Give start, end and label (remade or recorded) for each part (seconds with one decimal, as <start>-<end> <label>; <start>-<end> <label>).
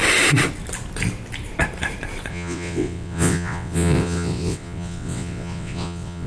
0.0-2.3 recorded; 2.3-6.3 remade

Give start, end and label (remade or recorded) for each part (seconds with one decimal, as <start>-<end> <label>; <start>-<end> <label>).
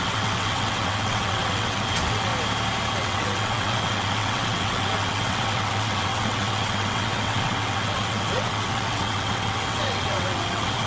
0.0-2.3 remade; 2.3-2.9 recorded; 2.9-10.9 remade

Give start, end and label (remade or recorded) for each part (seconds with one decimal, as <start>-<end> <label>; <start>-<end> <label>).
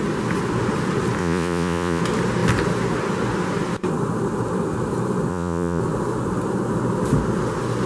0.0-1.2 recorded; 1.2-2.0 remade; 2.0-5.3 recorded; 5.3-5.8 remade; 5.8-7.9 recorded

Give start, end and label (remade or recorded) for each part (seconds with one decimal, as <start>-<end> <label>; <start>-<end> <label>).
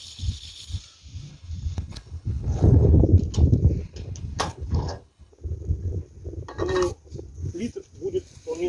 0.0-0.8 remade; 0.8-1.3 recorded; 1.3-3.0 remade; 3.0-3.8 recorded; 3.8-5.3 remade; 5.3-8.7 recorded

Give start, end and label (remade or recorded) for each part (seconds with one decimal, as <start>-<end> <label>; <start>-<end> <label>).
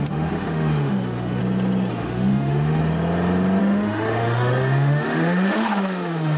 0.0-1.4 remade; 1.4-1.9 recorded; 1.9-2.8 remade; 2.8-3.6 recorded; 3.6-6.4 remade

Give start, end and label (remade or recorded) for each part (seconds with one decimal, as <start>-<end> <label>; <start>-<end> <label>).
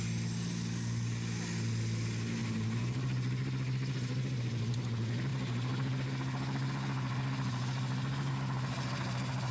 0.0-9.5 recorded